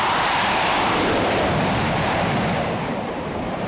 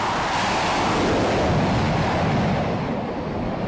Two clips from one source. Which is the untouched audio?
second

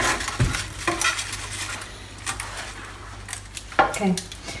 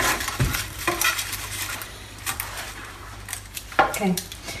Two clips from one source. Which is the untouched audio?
first